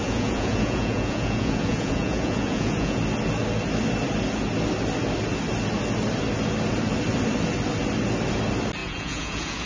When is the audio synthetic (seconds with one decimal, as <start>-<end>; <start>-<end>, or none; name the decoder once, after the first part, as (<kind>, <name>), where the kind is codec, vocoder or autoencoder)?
0.0-3.0 (vocoder, Vocos); 8.8-9.7